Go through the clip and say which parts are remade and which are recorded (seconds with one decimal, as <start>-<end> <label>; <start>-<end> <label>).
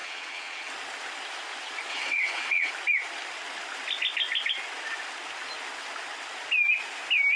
0.0-0.7 remade; 0.7-1.9 recorded; 1.9-2.7 remade; 2.7-7.4 recorded